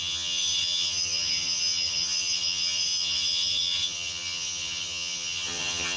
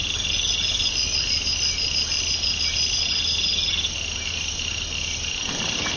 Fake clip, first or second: first